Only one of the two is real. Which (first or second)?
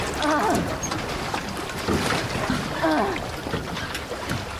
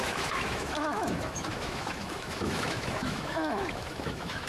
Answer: first